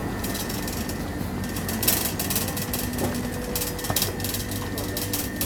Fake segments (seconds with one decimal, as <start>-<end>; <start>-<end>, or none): 0.0-0.6